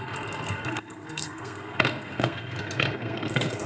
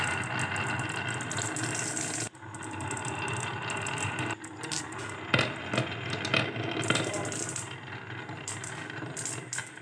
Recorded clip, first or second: second